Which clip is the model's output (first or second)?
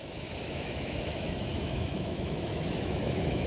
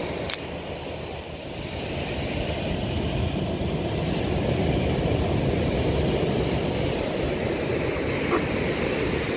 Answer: first